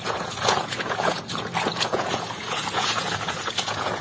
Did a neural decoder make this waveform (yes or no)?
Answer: yes